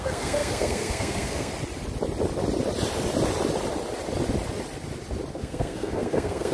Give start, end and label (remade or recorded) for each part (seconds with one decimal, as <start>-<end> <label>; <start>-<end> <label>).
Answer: 0.0-1.5 remade; 1.5-5.3 recorded; 5.3-6.5 remade